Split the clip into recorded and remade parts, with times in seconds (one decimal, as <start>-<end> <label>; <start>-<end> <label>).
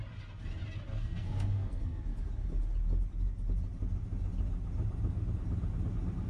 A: 0.0-0.9 recorded; 0.9-2.0 remade; 2.0-6.3 recorded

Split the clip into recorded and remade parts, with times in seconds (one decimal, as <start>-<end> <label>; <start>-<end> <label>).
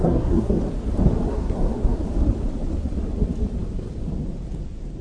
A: 0.0-0.6 remade; 0.6-1.3 recorded; 1.3-2.0 remade; 2.0-5.0 recorded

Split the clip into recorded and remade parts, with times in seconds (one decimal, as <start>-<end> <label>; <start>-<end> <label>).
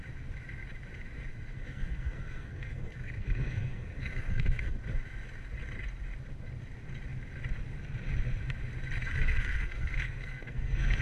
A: 0.0-1.3 recorded; 1.3-4.8 remade; 4.8-9.0 recorded; 9.0-11.0 remade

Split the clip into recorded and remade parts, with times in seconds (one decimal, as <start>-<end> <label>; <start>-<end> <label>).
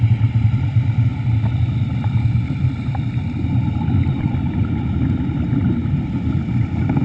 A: 0.0-7.0 recorded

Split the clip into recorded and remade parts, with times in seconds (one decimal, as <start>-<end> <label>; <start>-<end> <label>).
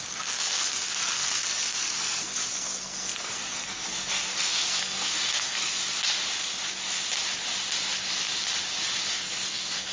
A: 0.0-5.8 remade; 5.8-9.1 recorded; 9.1-9.9 remade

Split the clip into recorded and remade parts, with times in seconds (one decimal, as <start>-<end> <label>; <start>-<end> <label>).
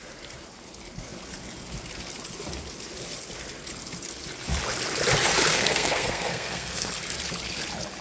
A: 0.0-5.5 recorded; 5.5-6.9 remade; 6.9-8.0 recorded